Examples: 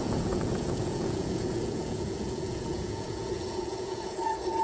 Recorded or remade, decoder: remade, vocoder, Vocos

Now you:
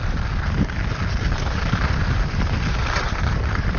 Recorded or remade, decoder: remade, vocoder, BigVGAN v2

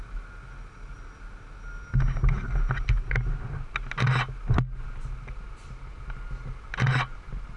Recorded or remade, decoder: recorded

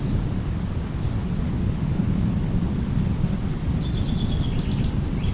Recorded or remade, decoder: recorded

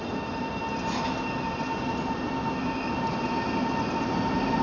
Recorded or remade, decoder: recorded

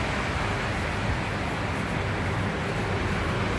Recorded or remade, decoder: recorded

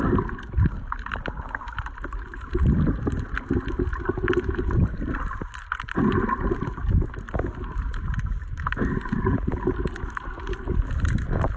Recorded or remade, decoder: recorded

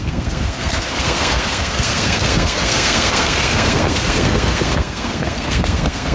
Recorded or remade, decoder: remade, codec, SNAC